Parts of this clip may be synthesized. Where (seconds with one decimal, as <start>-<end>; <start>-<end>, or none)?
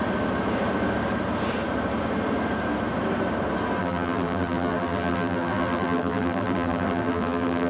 3.8-7.7